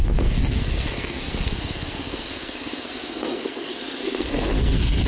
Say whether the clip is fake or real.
fake